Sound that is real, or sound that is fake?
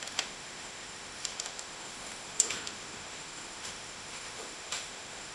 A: fake